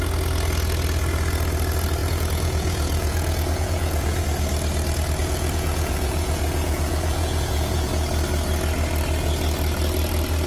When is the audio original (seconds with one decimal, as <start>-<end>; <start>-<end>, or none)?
0.0-2.0; 4.2-5.2; 7.9-10.5